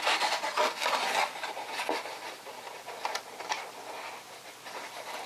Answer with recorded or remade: recorded